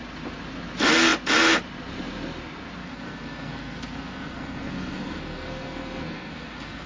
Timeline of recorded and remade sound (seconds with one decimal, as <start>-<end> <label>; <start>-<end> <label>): 0.0-2.8 recorded; 2.8-6.9 remade

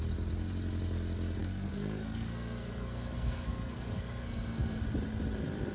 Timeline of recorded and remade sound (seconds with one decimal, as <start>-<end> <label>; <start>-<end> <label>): 0.0-1.4 recorded; 1.4-4.8 remade; 4.8-5.7 recorded

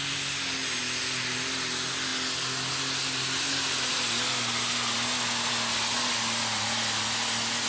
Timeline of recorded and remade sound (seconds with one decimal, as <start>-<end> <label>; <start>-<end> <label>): 0.0-7.7 recorded

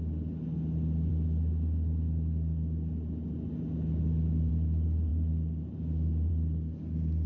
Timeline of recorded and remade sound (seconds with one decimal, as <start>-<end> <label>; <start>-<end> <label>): 0.0-7.3 recorded

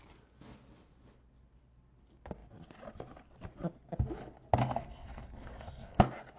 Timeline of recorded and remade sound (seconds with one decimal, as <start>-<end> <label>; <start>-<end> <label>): 0.0-4.6 recorded; 4.6-6.0 remade; 6.0-6.4 recorded

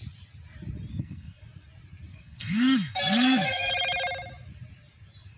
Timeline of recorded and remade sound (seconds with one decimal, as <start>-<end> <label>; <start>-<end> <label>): 0.0-0.9 recorded; 0.9-1.4 remade; 1.4-2.1 recorded; 2.1-3.7 remade; 3.7-5.4 recorded